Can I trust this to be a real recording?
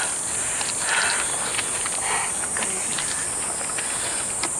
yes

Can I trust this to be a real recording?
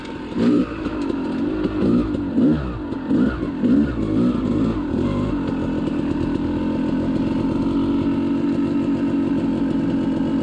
yes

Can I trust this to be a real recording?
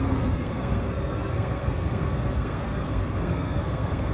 no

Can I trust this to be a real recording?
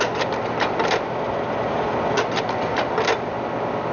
yes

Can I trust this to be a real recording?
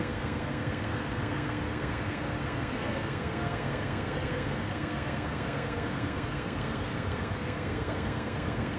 no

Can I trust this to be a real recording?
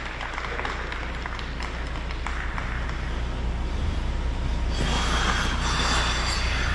yes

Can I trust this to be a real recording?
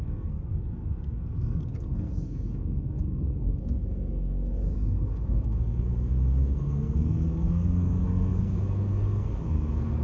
no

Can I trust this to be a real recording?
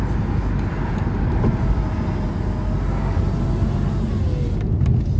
yes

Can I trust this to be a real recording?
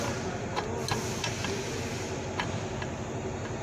yes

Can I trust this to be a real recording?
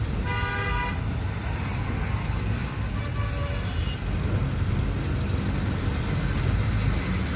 yes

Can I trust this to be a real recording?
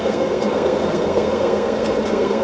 no